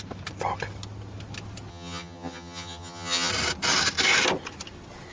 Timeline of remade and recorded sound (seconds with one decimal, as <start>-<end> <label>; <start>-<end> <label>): 0.0-1.7 recorded; 1.7-3.3 remade; 3.3-5.1 recorded